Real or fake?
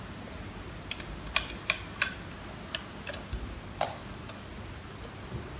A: real